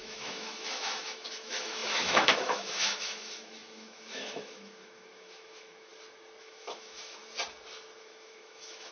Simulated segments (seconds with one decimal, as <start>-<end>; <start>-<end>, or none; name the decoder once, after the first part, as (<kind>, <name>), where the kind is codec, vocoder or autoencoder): 0.0-5.9 (autoencoder, DAC-VAE); 6.4-7.2; 8.0-8.9